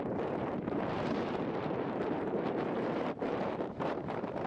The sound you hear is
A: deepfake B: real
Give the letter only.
A